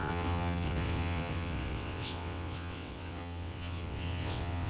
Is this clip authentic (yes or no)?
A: no